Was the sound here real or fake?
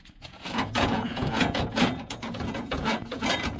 fake